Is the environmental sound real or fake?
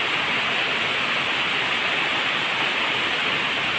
real